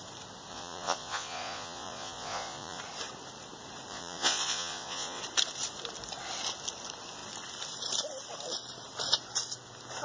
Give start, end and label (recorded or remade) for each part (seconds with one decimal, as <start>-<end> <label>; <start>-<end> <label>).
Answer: 0.0-0.5 recorded; 0.5-2.8 remade; 2.8-3.9 recorded; 3.9-5.2 remade; 5.2-10.0 recorded